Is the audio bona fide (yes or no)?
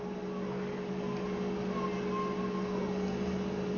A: yes